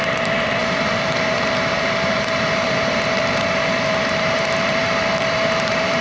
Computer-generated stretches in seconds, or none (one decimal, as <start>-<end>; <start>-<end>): 0.0-6.0